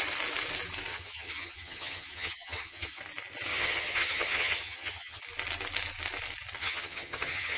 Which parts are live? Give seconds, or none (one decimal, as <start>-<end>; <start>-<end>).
0.0-0.9; 3.0-3.5; 5.2-6.6